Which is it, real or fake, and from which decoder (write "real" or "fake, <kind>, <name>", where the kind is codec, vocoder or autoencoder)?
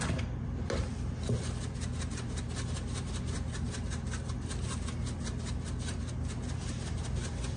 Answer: real